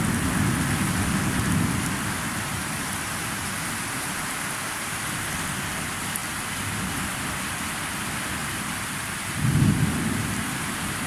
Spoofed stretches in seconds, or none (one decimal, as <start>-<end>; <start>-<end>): 6.2-7.1; 8.4-10.1